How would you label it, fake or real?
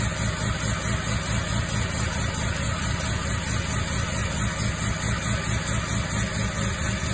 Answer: real